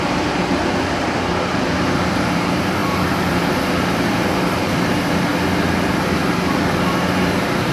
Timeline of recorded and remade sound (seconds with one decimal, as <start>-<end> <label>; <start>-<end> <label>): 0.0-0.6 remade; 0.6-1.5 recorded; 1.5-5.3 remade; 5.3-7.0 recorded; 7.0-7.7 remade